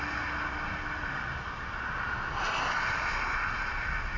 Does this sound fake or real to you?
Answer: real